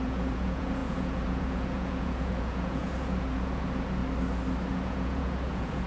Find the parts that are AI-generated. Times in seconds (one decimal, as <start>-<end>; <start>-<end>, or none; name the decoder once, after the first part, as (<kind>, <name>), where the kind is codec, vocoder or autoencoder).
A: 0.0-4.0 (vocoder, Vocos); 4.7-5.9